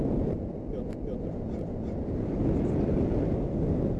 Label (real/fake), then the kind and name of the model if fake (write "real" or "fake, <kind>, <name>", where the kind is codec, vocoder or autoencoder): real